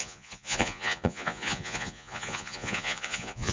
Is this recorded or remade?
remade